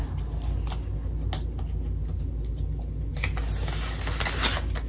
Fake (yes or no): no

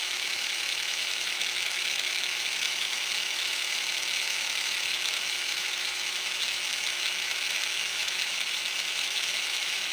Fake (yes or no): yes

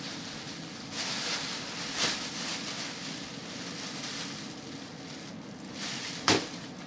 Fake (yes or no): no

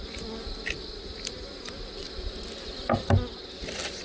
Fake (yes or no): no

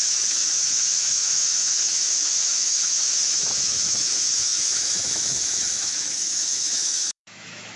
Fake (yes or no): yes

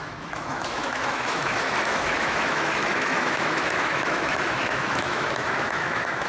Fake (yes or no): yes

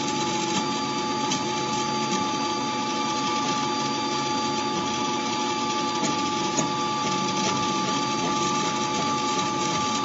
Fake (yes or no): no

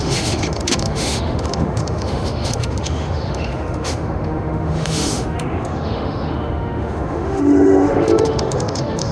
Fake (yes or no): yes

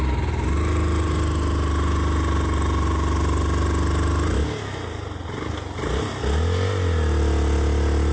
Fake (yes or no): no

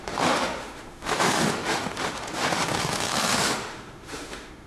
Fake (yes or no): yes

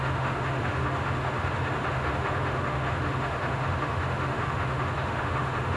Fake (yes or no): yes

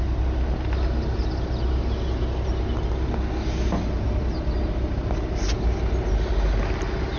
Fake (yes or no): no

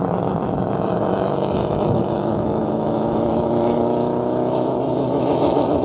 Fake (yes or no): yes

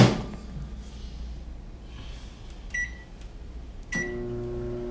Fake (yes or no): no